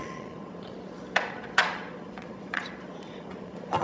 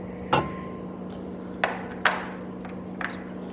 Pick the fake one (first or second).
first